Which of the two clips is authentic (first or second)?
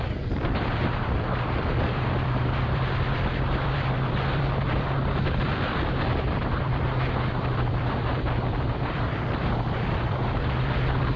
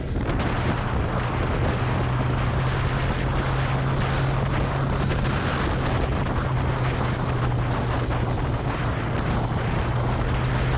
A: second